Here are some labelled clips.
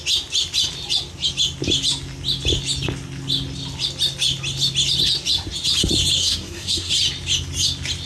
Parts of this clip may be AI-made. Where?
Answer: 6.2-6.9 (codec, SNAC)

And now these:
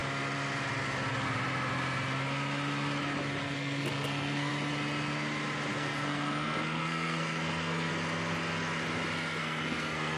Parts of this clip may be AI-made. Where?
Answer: 3.4-4.5 (codec, SNAC); 5.7-7.9; 9.4-10.2

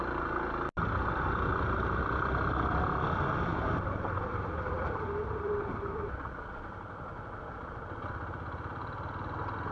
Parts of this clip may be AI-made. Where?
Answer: 3.5-6.3 (vocoder, BigVGAN v2)

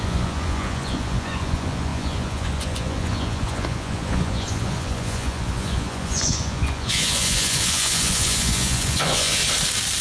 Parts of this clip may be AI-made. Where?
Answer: 0.0-9.4 (vocoder, Vocos)

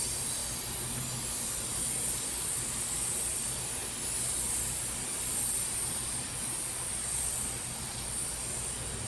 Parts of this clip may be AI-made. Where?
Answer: none

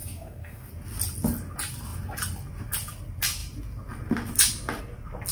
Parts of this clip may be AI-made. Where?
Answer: 0.0-0.7 (codec, DAC)

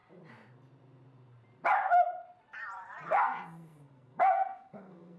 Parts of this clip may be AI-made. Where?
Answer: 3.1-5.2 (codec, SNAC)

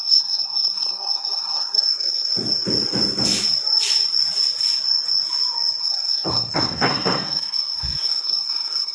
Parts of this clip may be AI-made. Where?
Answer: 0.0-2.3 (codec, SNAC); 5.8-8.9